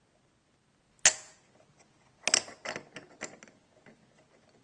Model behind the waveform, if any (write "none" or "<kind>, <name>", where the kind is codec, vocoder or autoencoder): none